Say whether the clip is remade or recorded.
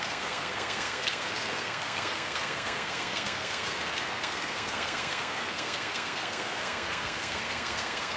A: remade